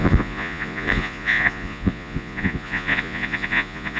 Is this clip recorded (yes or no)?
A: no